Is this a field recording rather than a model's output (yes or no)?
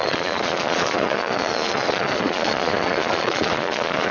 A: no